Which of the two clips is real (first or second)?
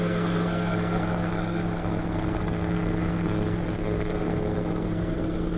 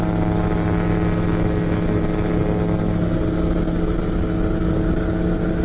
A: second